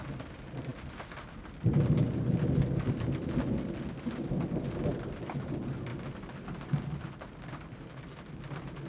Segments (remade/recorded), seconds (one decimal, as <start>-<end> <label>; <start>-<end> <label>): 0.0-8.9 recorded